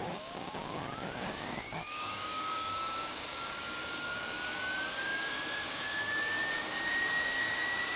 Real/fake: fake